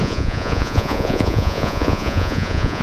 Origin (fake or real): fake